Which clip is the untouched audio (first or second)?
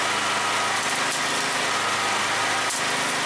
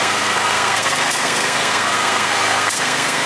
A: first